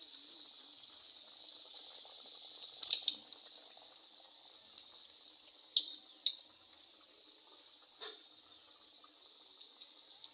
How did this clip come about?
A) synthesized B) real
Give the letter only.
B